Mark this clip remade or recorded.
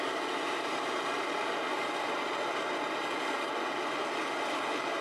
recorded